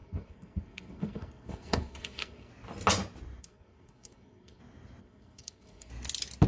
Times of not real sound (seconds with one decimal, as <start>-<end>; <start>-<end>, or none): 0.0-2.5; 3.4-4.6; 5.0-5.9

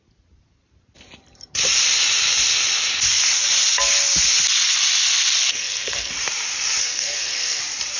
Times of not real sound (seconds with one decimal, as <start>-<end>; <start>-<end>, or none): 5.5-6.1; 6.8-7.6

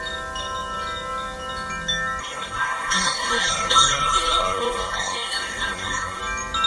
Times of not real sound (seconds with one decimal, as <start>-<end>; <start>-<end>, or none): 2.2-6.2

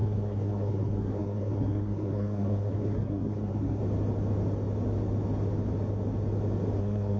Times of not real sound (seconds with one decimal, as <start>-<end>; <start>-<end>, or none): 0.0-3.8; 6.8-7.2

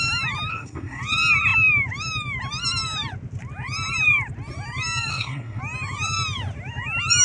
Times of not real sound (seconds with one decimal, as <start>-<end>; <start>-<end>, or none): 0.5-1.0; 5.1-5.6

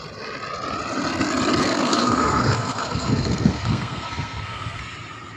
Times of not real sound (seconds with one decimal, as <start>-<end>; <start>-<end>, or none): 1.6-4.8

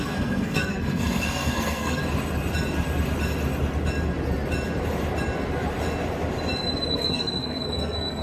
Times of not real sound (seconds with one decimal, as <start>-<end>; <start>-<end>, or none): 0.0-2.0; 6.9-8.2